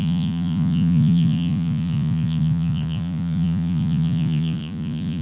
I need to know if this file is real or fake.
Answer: fake